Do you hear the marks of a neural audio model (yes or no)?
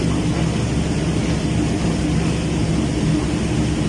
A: no